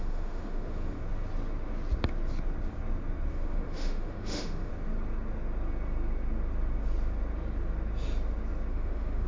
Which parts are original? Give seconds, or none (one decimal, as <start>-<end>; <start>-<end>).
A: 1.0-3.3; 4.7-8.7